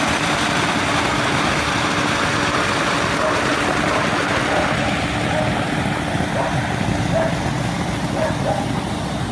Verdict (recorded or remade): recorded